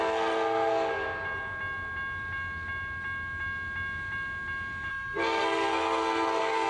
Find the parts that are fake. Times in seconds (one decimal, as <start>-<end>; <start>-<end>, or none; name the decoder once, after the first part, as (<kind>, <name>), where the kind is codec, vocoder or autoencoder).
0.0-0.9 (codec, SNAC); 4.9-6.7